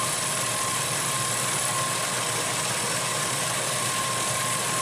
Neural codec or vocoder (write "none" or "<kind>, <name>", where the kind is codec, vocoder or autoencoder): none